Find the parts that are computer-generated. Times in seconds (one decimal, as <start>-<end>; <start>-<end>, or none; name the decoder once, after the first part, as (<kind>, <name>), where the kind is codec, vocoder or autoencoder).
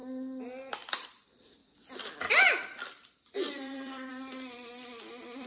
0.7-1.6 (vocoder, BigVGAN v2); 2.3-5.5